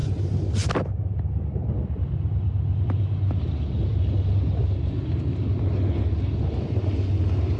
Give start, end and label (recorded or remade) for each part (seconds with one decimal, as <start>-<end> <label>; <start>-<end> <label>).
0.0-7.6 recorded